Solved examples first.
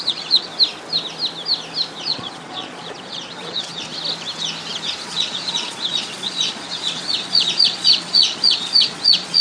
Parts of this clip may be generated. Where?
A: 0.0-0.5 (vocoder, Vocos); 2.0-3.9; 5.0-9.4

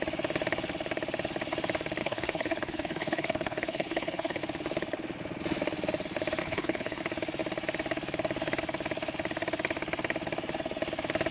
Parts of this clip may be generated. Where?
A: 2.0-4.4 (codec, HILCodec); 6.4-7.0

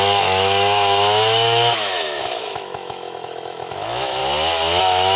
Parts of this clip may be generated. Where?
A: 0.0-4.2 (autoencoder, DAC-VAE); 4.8-5.2

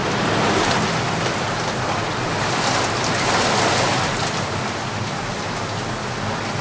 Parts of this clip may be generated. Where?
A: none